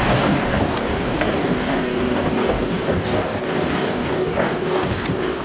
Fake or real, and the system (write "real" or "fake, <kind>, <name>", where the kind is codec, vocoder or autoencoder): fake, codec, DAC